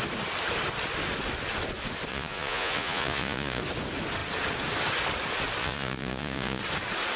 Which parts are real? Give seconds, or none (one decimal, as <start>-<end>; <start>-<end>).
0.0-2.1; 3.6-5.6; 6.6-7.2